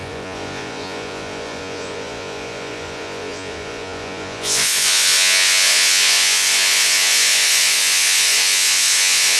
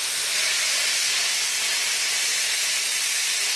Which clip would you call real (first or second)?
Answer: second